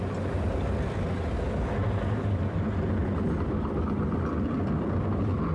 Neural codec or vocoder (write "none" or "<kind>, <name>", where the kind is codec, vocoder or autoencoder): none